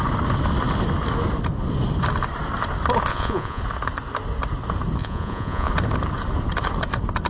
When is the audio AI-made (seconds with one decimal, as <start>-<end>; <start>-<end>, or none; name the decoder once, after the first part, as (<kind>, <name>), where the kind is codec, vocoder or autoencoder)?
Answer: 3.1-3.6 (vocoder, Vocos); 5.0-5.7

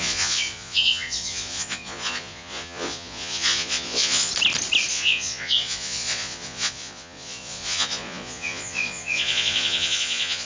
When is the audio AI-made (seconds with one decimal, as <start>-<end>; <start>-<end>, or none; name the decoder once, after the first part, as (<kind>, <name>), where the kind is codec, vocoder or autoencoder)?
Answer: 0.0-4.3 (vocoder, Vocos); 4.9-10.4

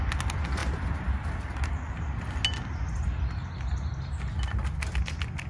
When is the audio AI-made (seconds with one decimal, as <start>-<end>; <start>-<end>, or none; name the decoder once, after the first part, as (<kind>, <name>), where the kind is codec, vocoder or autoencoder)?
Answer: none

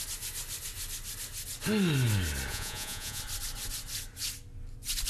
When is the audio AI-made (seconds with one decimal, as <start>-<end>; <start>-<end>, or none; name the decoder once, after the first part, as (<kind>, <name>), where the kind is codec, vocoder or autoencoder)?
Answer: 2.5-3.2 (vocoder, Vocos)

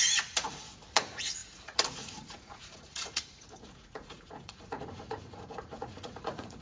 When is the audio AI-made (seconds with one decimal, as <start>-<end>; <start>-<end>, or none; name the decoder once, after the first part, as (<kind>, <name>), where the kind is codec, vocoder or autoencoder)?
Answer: 0.0-6.6 (vocoder, Vocos)